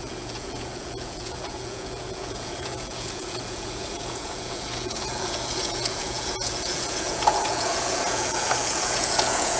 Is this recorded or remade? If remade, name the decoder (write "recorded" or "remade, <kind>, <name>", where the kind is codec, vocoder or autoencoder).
remade, vocoder, Vocos